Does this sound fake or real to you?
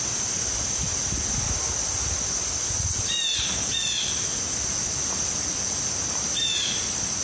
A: real